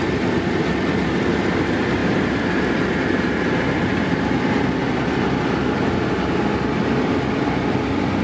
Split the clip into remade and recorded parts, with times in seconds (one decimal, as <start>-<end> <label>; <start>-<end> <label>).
0.0-8.2 recorded